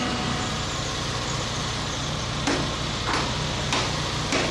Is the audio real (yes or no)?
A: yes